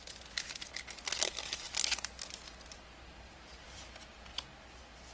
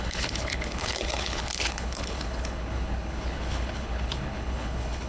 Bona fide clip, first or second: first